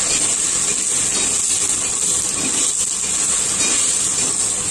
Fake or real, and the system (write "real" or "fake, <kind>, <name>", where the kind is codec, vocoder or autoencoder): real